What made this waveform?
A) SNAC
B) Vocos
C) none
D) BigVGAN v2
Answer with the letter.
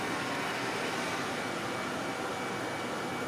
C